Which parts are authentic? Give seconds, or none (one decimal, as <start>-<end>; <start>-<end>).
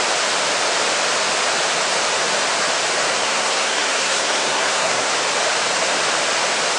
0.0-3.1; 5.1-6.8